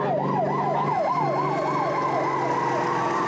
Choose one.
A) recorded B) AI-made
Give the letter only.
A